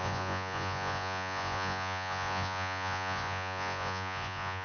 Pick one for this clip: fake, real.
fake